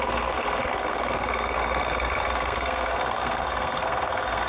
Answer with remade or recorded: remade